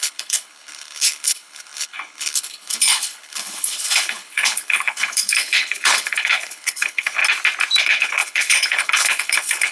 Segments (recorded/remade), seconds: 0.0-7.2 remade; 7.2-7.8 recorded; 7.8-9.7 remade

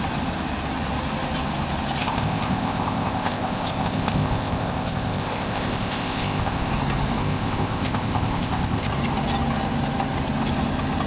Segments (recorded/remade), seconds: 0.0-2.0 recorded; 2.0-6.7 remade; 6.7-7.2 recorded; 7.2-8.9 remade; 8.9-11.1 recorded

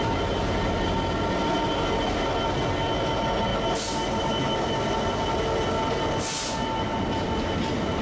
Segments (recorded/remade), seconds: 0.0-8.0 recorded

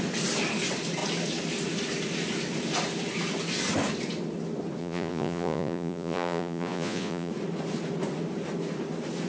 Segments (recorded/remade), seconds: 0.0-4.8 recorded; 4.8-7.3 remade; 7.3-9.3 recorded

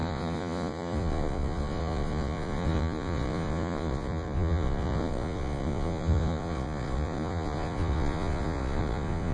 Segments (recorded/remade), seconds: 0.0-9.3 remade

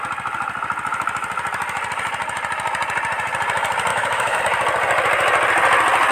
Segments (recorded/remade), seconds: 0.0-3.9 recorded; 3.9-4.4 remade; 4.4-6.1 recorded